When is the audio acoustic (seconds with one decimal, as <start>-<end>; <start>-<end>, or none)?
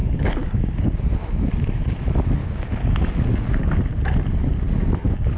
1.0-2.4; 3.0-5.4